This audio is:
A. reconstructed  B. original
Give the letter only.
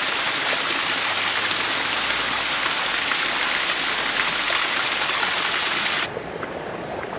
B